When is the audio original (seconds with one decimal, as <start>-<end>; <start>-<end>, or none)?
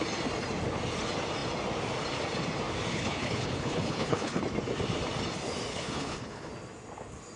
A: 0.0-2.9; 4.4-5.7; 6.5-7.4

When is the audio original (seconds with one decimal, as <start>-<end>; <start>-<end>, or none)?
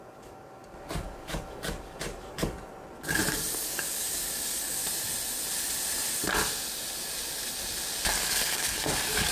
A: 2.7-3.3; 4.8-8.2